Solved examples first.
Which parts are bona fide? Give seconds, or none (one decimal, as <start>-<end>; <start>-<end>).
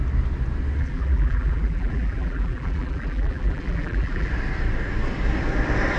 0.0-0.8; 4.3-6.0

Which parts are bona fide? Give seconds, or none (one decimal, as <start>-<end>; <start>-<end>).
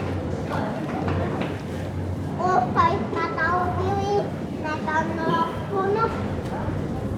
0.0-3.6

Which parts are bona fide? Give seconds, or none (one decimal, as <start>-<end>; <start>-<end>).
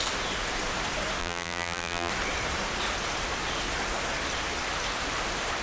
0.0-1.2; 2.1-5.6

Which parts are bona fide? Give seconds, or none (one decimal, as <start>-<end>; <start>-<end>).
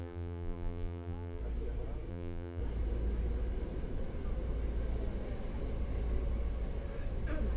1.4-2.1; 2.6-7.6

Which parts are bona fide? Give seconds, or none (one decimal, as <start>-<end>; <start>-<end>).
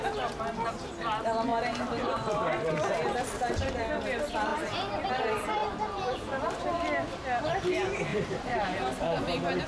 0.0-4.5; 5.1-5.6; 6.7-8.1; 8.8-9.7